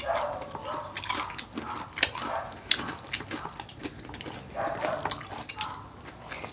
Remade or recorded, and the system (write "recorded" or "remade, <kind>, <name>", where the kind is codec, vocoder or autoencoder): recorded